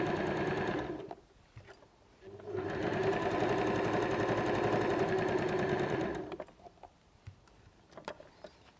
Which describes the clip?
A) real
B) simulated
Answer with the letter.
A